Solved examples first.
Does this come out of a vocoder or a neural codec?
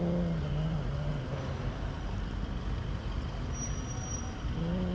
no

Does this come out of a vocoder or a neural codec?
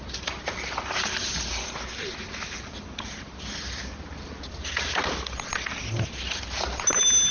no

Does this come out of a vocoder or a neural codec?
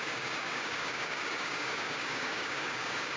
yes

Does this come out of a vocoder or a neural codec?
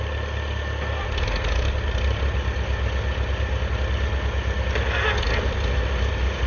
no